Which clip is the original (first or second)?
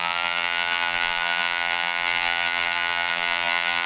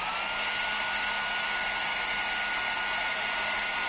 second